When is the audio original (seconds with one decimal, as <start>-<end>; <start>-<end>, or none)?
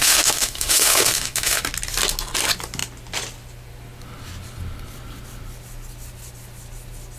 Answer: 1.6-7.2